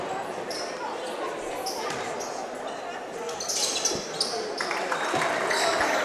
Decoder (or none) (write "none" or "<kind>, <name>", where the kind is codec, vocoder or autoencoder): none